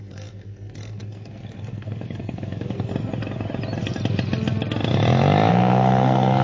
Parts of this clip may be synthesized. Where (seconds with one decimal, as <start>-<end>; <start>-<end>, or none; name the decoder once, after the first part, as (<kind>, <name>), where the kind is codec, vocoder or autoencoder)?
0.0-2.9 (codec, SNAC); 5.5-6.4